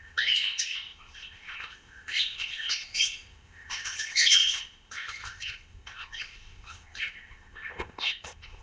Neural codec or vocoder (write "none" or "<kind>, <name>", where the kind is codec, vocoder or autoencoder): codec, ZipCodec